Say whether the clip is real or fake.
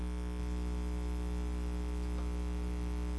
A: real